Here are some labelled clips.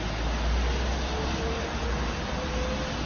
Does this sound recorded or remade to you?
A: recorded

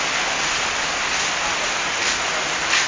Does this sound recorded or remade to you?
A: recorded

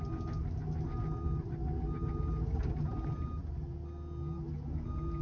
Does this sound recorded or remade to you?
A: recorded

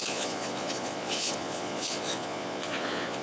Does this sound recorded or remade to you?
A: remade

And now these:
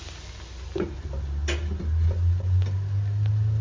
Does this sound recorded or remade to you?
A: recorded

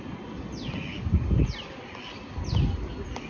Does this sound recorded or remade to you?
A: recorded